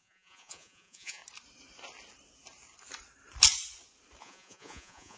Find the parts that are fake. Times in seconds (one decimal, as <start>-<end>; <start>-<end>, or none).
0.0-1.2; 4.2-5.2